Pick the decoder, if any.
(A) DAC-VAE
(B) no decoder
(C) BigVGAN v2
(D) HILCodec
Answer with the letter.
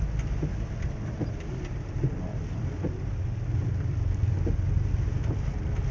B